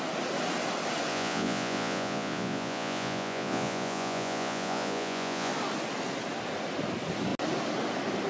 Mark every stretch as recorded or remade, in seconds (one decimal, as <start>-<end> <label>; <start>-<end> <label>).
0.0-1.1 recorded; 1.1-5.5 remade; 5.5-8.3 recorded